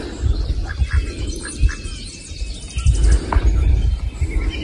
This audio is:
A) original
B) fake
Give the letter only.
A